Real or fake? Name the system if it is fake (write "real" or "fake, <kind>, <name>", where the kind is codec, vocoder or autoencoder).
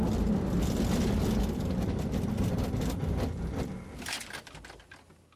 real